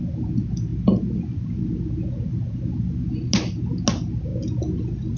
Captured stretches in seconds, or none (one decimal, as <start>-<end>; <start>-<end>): 0.0-5.2